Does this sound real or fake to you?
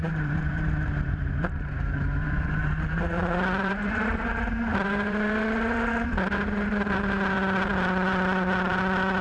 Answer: fake